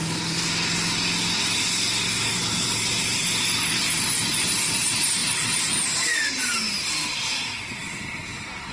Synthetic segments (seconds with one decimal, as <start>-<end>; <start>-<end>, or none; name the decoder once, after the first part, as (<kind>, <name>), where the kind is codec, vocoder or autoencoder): none